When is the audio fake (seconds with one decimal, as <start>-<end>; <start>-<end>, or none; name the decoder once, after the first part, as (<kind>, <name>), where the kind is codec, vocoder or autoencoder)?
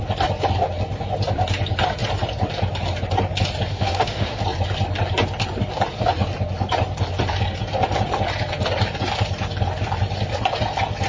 3.7-4.4 (autoencoder, DAC-VAE)